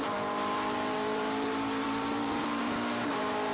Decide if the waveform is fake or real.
fake